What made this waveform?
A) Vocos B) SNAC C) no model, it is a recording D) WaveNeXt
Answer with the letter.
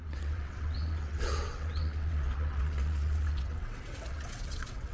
D